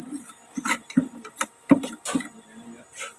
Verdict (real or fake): real